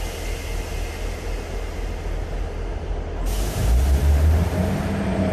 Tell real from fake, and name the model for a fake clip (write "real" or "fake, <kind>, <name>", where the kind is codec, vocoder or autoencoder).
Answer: real